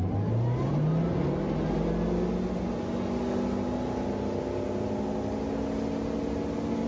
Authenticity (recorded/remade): recorded